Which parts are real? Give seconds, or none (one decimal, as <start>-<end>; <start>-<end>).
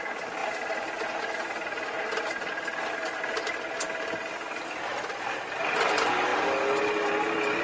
0.0-7.6